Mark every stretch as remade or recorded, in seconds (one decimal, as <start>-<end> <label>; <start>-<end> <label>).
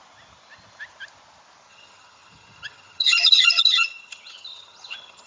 0.0-1.7 recorded; 1.7-5.3 remade